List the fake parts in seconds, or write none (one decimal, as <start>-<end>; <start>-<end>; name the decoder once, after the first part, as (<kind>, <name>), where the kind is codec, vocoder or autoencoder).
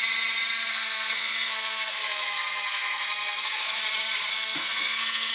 0.7-3.8 (codec, SNAC); 4.3-5.3